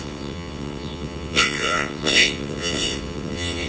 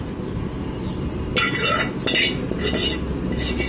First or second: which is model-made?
first